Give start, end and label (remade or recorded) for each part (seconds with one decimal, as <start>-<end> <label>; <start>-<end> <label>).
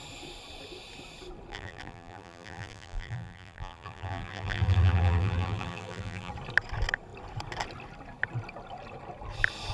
0.0-1.5 recorded; 1.5-6.3 remade; 6.3-9.7 recorded